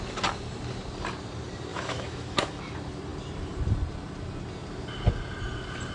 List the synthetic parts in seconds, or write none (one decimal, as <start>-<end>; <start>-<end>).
1.7-2.6